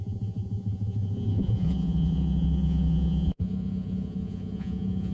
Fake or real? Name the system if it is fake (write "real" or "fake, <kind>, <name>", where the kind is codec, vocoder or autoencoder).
fake, vocoder, Vocos